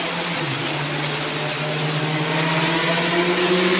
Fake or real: real